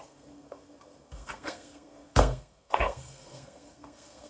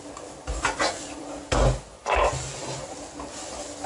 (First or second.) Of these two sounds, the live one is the second